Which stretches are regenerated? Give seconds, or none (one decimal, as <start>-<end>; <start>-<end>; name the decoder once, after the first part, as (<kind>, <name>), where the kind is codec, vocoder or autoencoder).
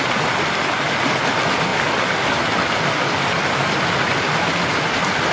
0.0-5.3 (vocoder, BigVGAN v2)